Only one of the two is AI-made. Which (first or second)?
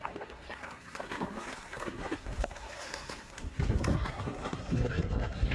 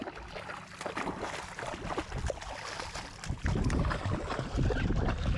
first